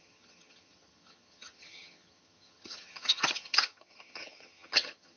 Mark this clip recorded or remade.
remade